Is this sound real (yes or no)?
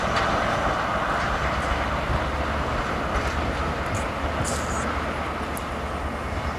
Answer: yes